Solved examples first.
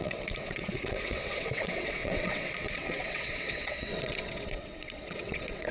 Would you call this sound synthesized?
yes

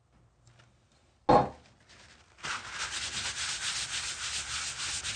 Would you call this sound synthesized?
no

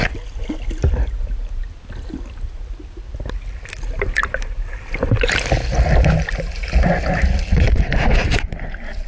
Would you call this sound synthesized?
no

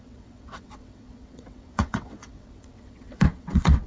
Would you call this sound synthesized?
yes